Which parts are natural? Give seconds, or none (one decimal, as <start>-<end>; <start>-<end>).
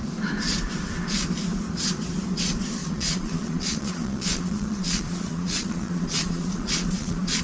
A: 0.0-2.8